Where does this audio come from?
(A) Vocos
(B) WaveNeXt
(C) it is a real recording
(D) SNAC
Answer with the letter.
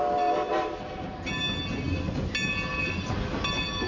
C